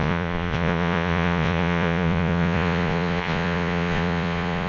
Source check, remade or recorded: remade